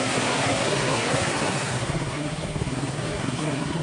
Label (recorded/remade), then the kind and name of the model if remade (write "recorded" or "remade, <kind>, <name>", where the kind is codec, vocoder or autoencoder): remade, codec, SNAC